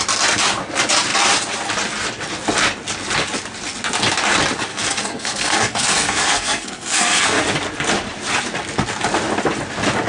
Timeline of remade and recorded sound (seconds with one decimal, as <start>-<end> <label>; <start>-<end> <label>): 0.0-4.7 recorded; 4.7-7.4 remade; 7.4-10.1 recorded